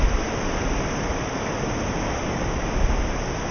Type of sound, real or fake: real